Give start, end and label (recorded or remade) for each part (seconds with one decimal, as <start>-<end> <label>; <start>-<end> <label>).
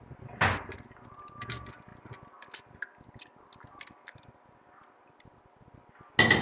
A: 0.0-6.4 recorded